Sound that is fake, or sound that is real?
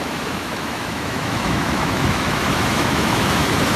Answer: fake